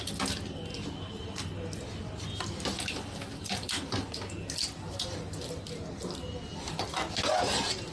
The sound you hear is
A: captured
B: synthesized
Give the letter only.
A